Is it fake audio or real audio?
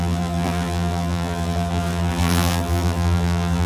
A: fake